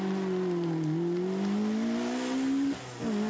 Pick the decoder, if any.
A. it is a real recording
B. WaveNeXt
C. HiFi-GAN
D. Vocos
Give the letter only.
A